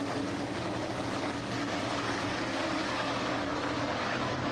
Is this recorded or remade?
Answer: remade